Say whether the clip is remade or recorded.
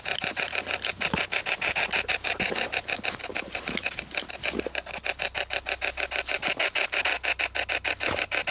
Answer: recorded